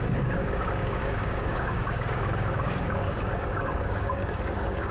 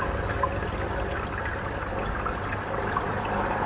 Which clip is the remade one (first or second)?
first